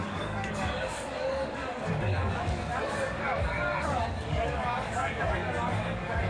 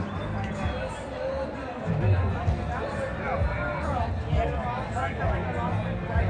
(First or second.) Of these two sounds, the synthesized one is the first